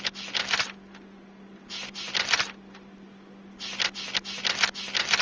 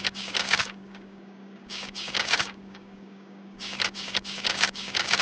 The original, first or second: first